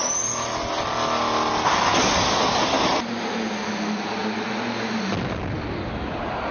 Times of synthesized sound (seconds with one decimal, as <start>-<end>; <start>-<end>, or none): none